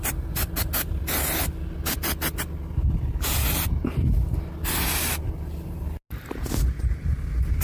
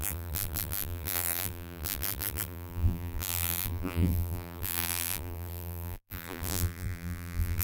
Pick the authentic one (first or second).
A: first